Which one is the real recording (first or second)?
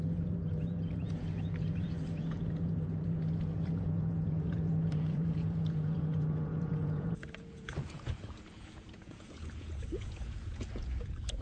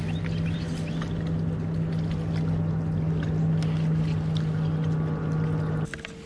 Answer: second